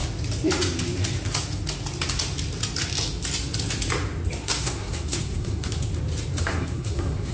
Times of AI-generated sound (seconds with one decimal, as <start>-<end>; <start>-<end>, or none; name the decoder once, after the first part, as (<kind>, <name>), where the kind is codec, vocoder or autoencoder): 4.4-5.9 (codec, SNAC); 6.4-7.3